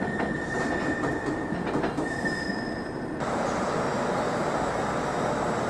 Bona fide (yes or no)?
yes